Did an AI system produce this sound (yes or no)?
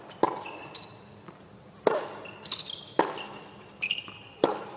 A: no